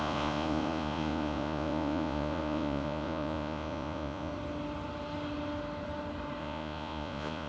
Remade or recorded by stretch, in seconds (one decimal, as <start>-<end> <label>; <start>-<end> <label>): 0.0-4.3 remade; 4.3-6.4 recorded; 6.4-7.5 remade